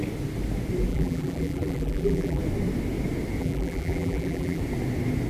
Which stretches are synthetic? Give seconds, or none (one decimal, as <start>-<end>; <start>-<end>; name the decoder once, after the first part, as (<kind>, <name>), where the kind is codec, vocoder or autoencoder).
0.9-2.4 (vocoder, BigVGAN v2); 3.4-4.6